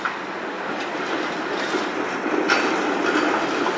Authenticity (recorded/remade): recorded